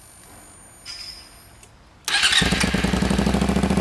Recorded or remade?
recorded